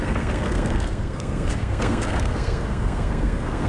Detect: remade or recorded remade